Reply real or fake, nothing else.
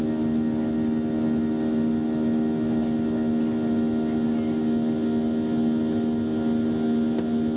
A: real